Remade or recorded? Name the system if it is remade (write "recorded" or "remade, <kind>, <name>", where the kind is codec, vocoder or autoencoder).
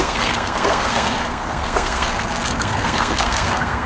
remade, codec, SNAC